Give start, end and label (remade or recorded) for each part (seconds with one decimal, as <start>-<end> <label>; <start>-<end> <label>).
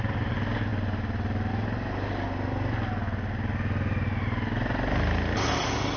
0.0-6.0 recorded